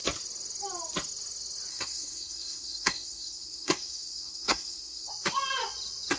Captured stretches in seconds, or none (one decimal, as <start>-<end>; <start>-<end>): 0.0-1.7; 5.1-6.2